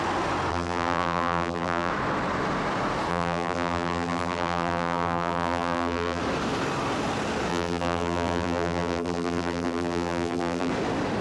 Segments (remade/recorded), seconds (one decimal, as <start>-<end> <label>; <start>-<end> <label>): 0.0-0.5 recorded; 0.5-1.9 remade; 1.9-3.1 recorded; 3.1-6.2 remade; 6.2-7.5 recorded; 7.5-10.7 remade; 10.7-11.2 recorded